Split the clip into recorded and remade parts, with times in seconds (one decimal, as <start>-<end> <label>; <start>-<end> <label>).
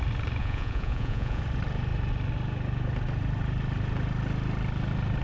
0.0-0.4 recorded; 0.4-1.4 remade; 1.4-5.2 recorded